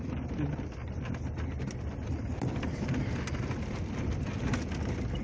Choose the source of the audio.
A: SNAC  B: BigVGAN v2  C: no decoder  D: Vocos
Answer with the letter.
C